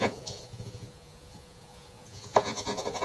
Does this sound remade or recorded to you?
remade